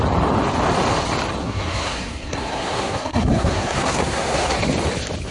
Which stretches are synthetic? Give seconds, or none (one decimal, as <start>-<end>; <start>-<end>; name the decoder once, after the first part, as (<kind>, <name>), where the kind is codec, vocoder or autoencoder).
1.4-4.6 (codec, SNAC)